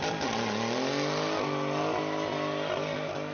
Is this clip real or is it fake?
real